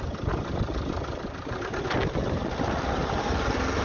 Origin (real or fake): real